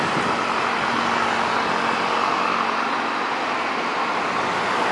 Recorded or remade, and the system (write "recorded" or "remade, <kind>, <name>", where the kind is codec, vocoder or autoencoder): recorded